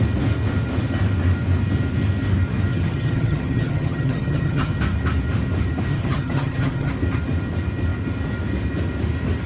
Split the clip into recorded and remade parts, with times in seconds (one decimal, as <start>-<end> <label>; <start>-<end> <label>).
0.0-2.7 recorded; 2.7-4.8 remade; 4.8-5.9 recorded; 5.9-6.9 remade; 6.9-9.5 recorded